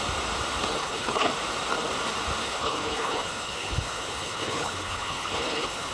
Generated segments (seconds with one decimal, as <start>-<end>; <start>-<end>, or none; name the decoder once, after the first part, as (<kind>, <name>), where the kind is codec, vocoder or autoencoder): 0.8-1.3 (codec, HILCodec); 2.4-5.9